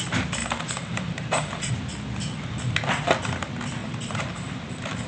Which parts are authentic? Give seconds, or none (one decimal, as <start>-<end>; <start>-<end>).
0.0-0.4; 1.7-3.8